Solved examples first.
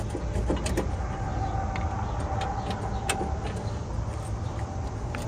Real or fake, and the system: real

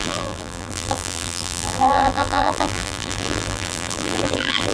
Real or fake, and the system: fake, vocoder, BigVGAN v2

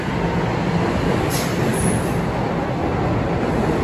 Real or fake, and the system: real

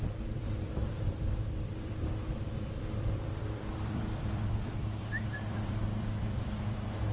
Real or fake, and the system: fake, vocoder, BigVGAN v2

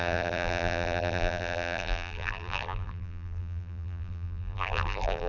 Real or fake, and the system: fake, vocoder, BigVGAN v2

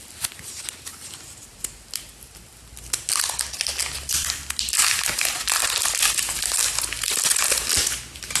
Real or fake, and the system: real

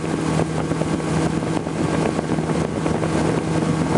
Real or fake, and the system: real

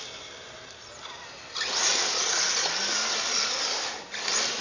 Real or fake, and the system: real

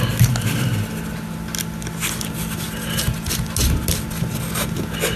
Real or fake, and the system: real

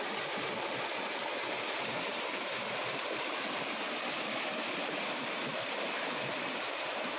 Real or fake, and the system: fake, vocoder, BigVGAN v2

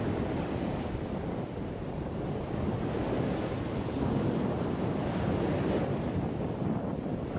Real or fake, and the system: fake, vocoder, BigVGAN v2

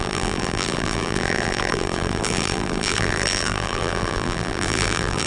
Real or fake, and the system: fake, vocoder, BigVGAN v2